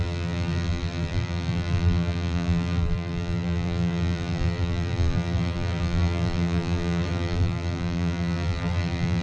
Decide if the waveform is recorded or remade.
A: remade